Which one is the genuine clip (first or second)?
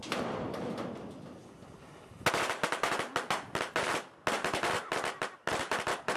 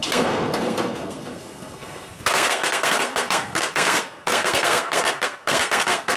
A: first